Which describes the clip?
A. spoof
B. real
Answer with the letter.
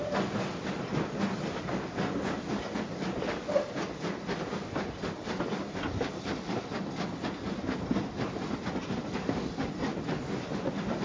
B